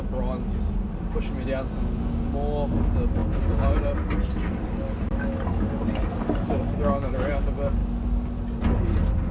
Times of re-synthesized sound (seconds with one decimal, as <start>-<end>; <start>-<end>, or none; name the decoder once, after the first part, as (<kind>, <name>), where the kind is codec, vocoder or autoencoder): none